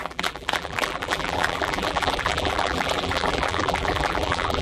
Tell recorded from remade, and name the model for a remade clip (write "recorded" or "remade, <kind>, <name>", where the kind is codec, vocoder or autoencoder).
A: remade, vocoder, BigVGAN v2